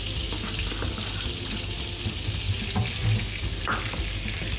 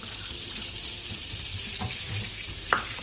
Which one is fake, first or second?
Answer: second